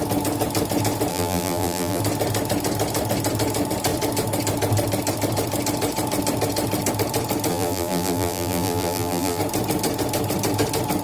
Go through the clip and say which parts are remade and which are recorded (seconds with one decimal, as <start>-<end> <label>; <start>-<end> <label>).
0.0-1.1 recorded; 1.1-2.0 remade; 2.0-7.5 recorded; 7.5-9.4 remade; 9.4-11.0 recorded